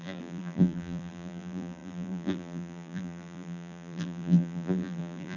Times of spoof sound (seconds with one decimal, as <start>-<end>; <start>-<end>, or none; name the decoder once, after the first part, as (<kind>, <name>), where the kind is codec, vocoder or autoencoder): 0.0-5.4 (vocoder, BigVGAN v2)